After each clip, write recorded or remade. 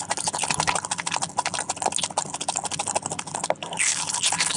recorded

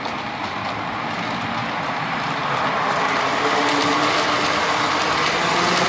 recorded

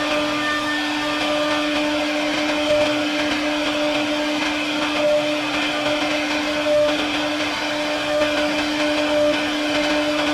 recorded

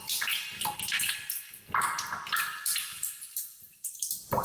recorded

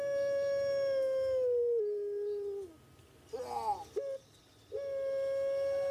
recorded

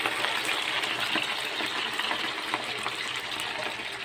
recorded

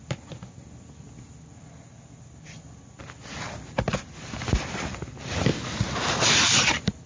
recorded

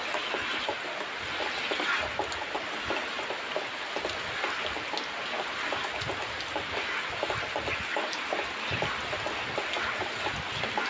recorded